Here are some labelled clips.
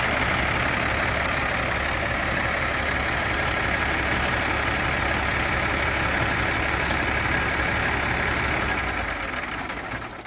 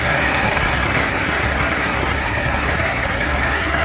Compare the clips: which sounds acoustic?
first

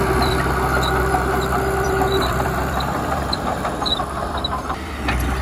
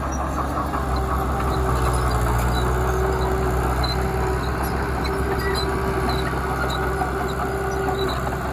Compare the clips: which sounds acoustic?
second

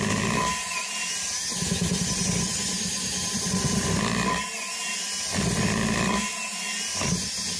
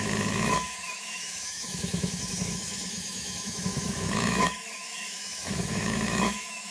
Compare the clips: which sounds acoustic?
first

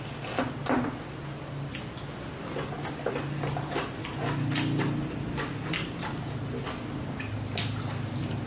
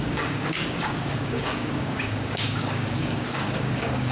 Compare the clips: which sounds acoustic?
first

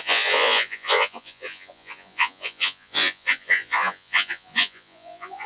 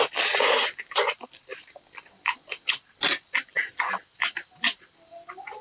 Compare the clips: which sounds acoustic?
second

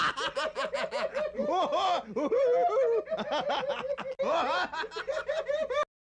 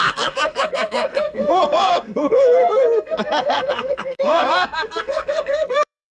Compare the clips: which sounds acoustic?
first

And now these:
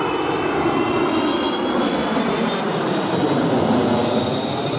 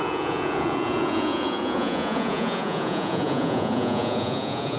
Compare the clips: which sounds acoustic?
first